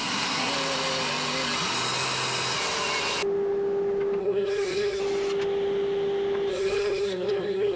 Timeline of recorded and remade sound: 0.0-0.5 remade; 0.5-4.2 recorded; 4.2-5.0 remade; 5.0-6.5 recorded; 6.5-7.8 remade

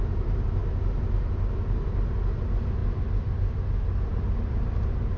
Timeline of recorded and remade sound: 0.0-5.2 recorded